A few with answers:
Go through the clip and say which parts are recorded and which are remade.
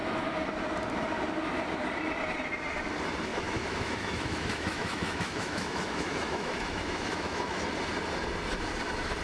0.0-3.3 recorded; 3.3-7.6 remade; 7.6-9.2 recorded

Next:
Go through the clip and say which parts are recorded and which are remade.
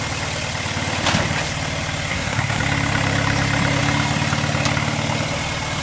0.0-2.1 recorded; 2.1-2.6 remade; 2.6-5.8 recorded